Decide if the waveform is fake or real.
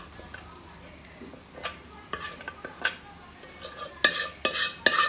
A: real